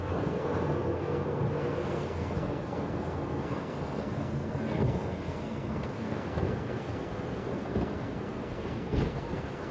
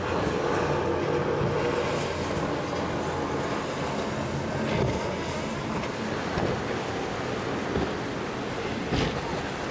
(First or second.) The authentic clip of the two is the second